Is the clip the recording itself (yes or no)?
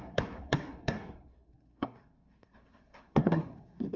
no